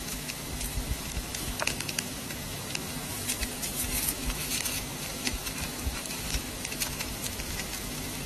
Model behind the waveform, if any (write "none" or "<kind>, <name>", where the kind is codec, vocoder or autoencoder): autoencoder, DAC-VAE